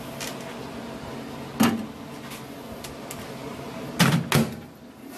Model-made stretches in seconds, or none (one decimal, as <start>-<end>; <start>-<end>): none